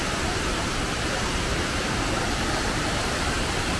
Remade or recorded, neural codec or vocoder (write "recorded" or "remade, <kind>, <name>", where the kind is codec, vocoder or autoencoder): remade, vocoder, BigVGAN v2